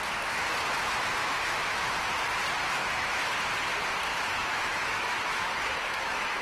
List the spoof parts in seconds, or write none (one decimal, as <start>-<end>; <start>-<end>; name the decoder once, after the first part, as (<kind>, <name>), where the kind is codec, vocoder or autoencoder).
1.2-2.0 (autoencoder, DAC-VAE); 2.8-3.3; 4.1-6.4